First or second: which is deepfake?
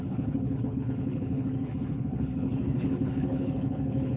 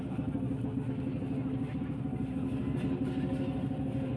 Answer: first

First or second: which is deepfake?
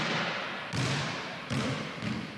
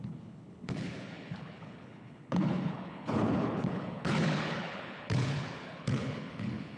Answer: second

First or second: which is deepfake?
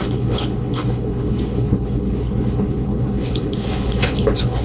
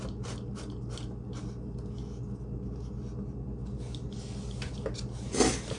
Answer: first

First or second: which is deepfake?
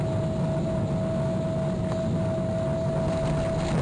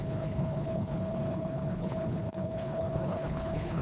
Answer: second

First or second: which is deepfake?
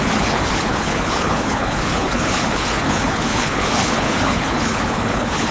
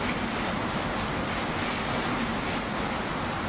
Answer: first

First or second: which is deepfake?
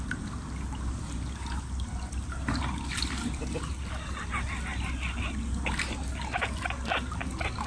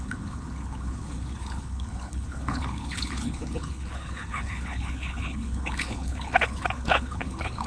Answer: second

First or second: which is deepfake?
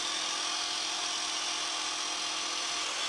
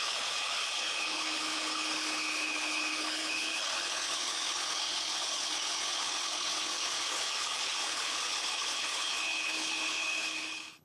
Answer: second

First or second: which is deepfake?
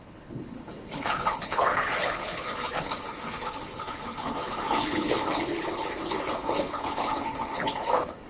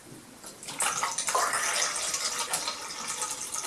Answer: first